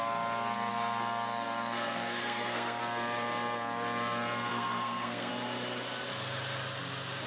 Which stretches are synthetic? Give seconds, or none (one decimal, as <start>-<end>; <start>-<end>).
0.7-2.8; 4.5-5.3

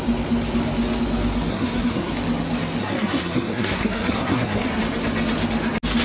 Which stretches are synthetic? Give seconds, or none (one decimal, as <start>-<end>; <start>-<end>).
1.5-2.1; 2.8-4.8

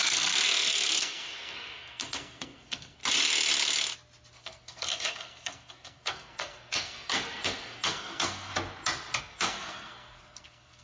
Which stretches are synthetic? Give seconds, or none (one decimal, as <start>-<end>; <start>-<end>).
0.0-3.0; 4.3-8.5; 9.2-10.8

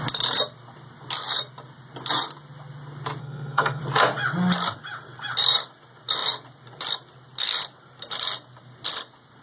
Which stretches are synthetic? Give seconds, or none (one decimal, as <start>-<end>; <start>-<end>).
3.2-3.8

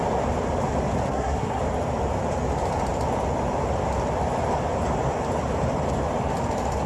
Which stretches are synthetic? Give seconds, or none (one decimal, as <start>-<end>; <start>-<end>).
1.1-1.6

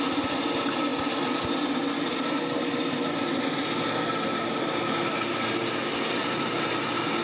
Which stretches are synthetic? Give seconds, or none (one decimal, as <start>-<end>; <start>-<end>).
none

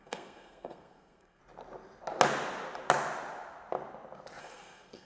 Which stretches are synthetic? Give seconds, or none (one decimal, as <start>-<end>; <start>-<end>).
0.0-1.4; 4.4-5.0